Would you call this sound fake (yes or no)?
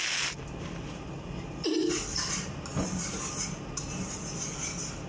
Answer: no